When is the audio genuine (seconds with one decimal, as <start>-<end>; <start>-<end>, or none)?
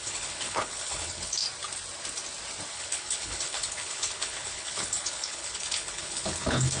1.4-2.7